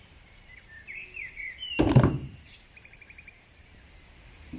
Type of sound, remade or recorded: remade